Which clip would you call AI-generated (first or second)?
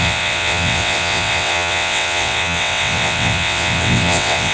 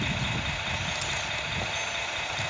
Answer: first